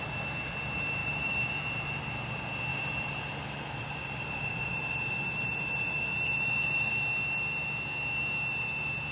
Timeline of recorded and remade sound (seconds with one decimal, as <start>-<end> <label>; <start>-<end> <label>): 0.0-1.0 recorded; 1.0-1.5 remade; 1.5-2.7 recorded; 2.7-6.9 remade; 6.9-9.1 recorded